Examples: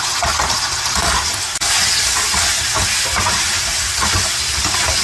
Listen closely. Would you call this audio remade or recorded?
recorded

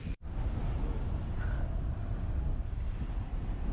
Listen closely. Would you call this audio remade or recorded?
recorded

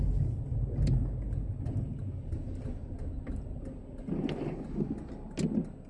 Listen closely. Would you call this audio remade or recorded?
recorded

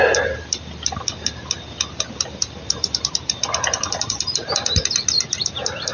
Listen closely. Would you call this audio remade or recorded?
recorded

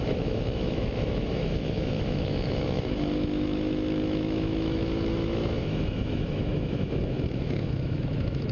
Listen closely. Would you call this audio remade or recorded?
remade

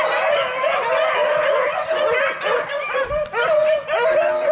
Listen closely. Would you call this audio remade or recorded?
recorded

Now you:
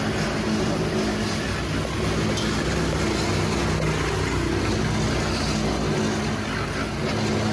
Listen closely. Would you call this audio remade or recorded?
recorded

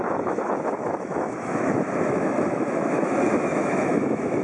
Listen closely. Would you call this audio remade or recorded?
remade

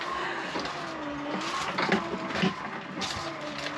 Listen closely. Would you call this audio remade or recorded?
recorded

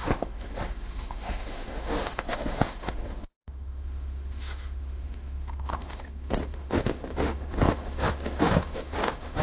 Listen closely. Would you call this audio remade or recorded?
remade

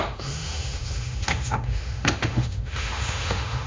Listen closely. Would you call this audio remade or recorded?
remade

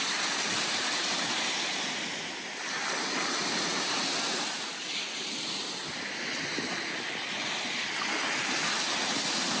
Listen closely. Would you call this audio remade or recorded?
recorded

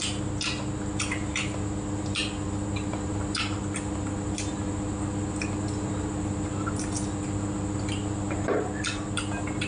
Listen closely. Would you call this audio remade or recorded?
recorded